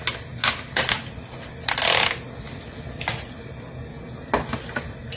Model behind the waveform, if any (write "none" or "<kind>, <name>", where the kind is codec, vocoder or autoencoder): none